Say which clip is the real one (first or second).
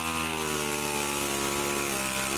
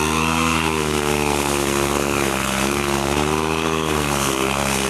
first